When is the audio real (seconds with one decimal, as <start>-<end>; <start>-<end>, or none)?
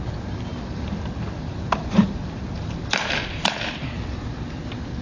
0.0-0.5; 3.5-5.0